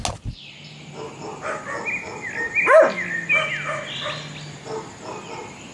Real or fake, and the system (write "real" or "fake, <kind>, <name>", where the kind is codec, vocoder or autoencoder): real